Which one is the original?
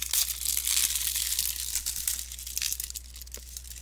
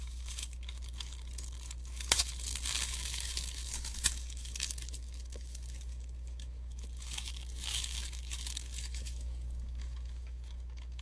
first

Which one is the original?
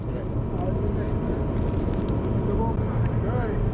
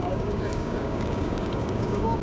first